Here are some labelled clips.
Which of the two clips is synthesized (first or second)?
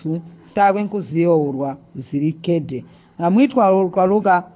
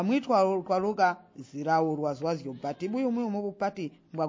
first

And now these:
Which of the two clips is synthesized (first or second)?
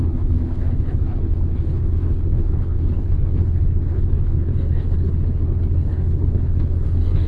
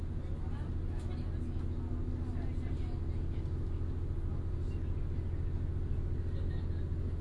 first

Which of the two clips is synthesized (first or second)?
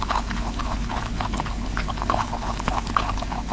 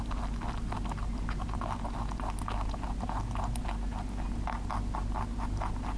first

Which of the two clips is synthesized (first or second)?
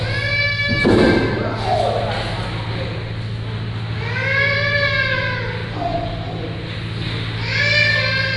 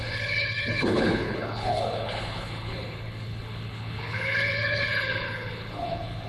second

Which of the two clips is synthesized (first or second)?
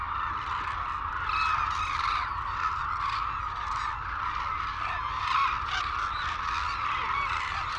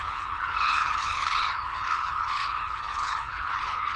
second